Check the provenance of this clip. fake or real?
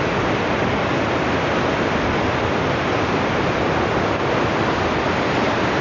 real